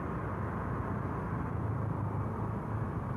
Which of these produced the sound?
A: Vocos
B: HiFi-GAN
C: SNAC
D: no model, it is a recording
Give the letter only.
D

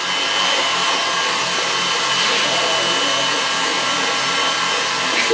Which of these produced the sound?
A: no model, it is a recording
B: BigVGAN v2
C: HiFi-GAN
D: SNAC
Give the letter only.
A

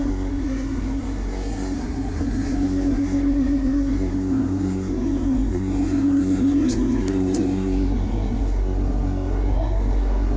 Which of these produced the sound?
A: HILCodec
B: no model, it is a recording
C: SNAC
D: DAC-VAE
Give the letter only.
C